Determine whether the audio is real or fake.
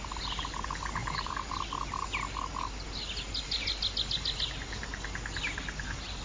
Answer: real